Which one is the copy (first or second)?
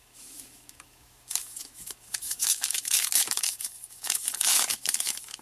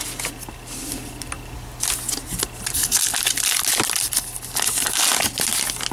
first